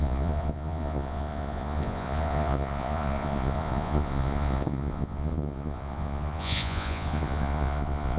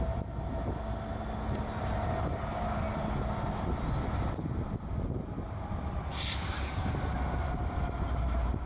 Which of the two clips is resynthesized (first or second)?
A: first